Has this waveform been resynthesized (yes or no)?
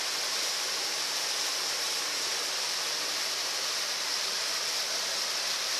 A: yes